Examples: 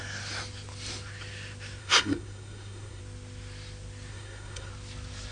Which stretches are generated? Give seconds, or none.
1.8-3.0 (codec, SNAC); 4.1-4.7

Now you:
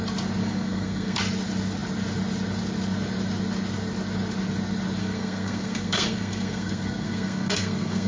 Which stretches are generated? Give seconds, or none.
0.4-1.2 (codec, SNAC); 5.0-8.1

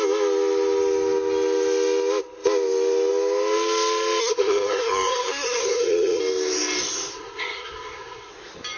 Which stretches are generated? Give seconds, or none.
4.2-6.2 (codec, SNAC); 7.1-8.3

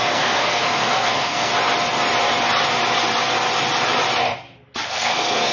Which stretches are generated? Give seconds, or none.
0.0-1.5 (codec, SNAC); 4.8-5.5

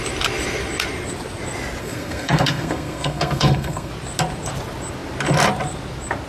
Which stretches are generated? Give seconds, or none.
1.8-3.9 (codec, SNAC)

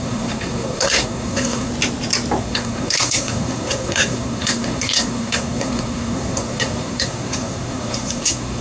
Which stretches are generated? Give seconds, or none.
0.0-1.7 (codec, SNAC); 2.4-8.6